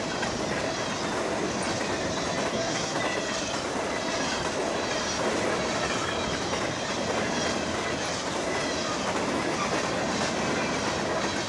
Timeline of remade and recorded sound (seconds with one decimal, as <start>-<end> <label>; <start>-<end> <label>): 0.0-2.5 recorded; 2.5-3.0 remade; 3.0-11.5 recorded

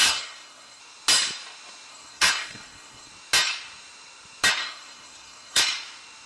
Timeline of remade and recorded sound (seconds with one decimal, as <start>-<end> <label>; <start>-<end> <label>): 0.0-0.8 remade; 0.8-1.9 recorded; 1.9-3.1 remade; 3.1-4.6 recorded; 4.6-5.6 remade; 5.6-6.3 recorded

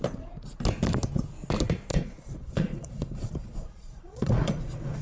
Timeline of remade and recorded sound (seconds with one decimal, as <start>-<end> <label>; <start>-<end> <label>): 0.0-1.9 recorded; 1.9-5.0 remade

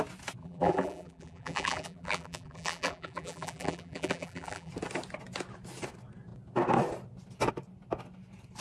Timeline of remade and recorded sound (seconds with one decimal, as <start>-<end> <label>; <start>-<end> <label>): 0.0-0.4 recorded; 0.4-4.7 remade; 4.7-8.6 recorded

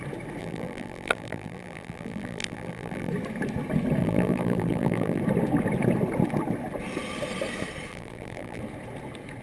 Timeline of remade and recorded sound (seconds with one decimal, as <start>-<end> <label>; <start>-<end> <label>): 0.0-0.4 recorded; 0.4-3.1 remade; 3.1-4.0 recorded; 4.0-5.2 remade; 5.2-7.9 recorded; 7.9-8.6 remade; 8.6-9.4 recorded

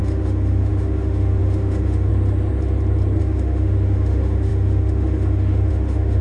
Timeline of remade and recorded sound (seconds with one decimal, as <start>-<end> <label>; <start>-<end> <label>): 0.0-2.1 remade; 2.1-3.2 recorded; 3.2-6.2 remade